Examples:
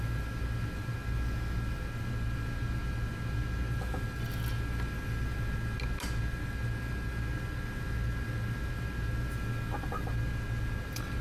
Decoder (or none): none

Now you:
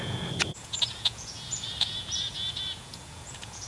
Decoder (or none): vocoder, Vocos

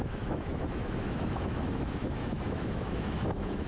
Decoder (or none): autoencoder, DAC-VAE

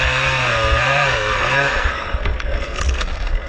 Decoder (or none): codec, SNAC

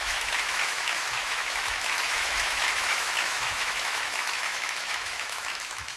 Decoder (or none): autoencoder, DAC-VAE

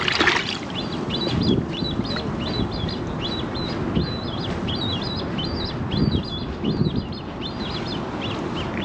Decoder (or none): none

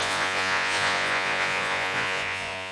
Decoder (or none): vocoder, Vocos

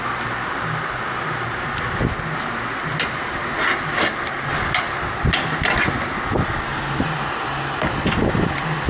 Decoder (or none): none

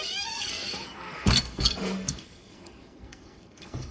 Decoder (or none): codec, SNAC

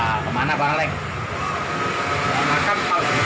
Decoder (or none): none